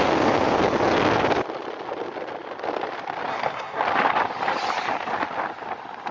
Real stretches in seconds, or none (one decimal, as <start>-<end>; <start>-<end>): 0.0-3.3; 3.8-6.1